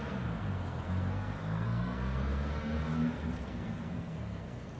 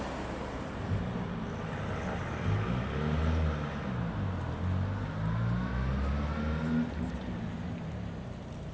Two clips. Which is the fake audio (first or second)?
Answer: first